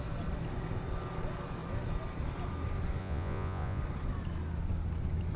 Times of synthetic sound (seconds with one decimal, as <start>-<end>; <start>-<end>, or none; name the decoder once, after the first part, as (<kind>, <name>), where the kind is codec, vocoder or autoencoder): 3.0-3.8 (vocoder, Vocos)